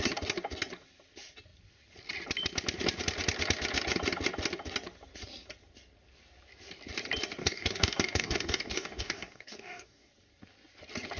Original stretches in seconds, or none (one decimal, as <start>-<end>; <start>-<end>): 0.0-7.4; 10.1-11.2